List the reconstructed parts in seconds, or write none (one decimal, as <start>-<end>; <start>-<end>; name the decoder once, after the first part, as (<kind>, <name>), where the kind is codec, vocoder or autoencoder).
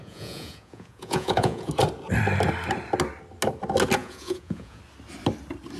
0.0-1.7 (vocoder, Vocos); 4.0-4.8